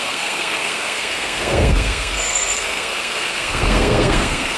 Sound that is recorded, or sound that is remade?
remade